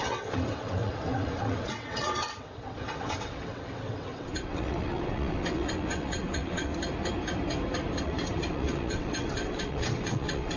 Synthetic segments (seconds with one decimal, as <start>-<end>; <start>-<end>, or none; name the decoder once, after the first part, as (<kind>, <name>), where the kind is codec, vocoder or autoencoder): 0.0-6.7 (vocoder, WaveNeXt); 8.0-10.6